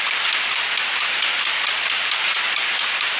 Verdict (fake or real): real